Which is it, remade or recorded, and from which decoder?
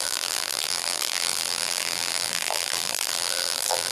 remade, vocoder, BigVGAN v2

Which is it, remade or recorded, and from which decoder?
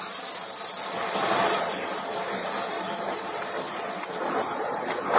recorded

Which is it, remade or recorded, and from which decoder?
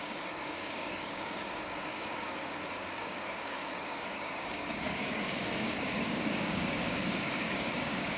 remade, codec, DAC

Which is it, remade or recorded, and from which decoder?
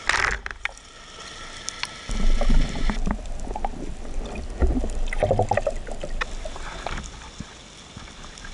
recorded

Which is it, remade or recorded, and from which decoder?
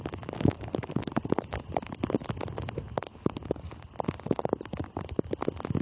recorded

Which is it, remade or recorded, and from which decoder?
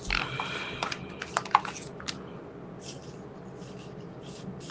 recorded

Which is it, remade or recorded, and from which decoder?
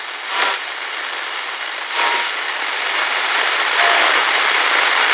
remade, vocoder, BigVGAN v2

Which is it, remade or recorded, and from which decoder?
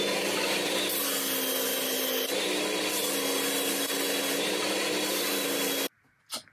recorded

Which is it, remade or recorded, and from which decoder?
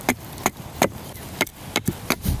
remade, vocoder, BigVGAN v2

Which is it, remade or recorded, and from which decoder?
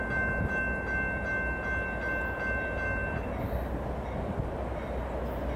recorded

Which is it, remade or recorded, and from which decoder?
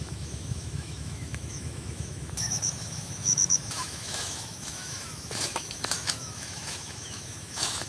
remade, autoencoder, DAC-VAE